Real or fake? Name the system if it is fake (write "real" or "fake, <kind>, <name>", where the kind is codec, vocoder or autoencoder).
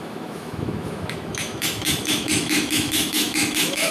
fake, autoencoder, DAC-VAE